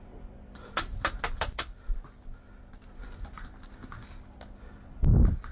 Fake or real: real